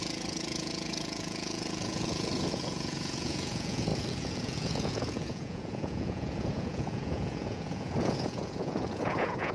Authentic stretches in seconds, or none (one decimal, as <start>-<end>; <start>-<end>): none